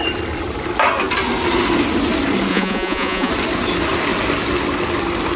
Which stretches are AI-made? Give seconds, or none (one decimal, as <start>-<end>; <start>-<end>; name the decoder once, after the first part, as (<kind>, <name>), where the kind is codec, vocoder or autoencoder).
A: 2.5-3.3 (vocoder, Vocos)